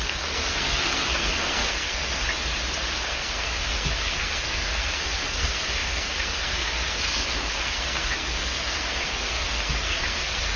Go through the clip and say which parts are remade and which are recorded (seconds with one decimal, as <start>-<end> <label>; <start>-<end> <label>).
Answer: 0.0-2.2 remade; 2.2-2.8 recorded; 2.8-10.6 remade